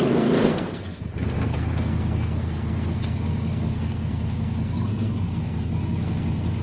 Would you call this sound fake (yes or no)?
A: yes